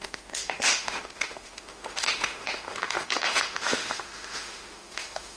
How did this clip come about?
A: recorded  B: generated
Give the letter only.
B